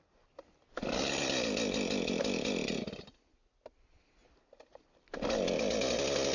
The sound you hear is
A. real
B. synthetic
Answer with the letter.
A